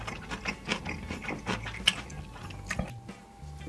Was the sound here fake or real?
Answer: real